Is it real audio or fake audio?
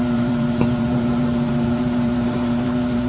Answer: fake